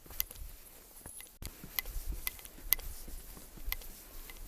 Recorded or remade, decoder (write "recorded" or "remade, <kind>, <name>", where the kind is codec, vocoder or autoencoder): recorded